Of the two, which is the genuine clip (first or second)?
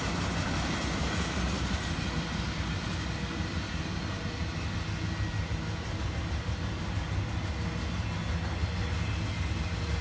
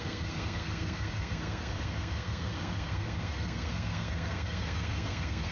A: first